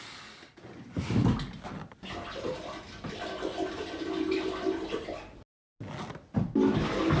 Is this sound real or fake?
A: real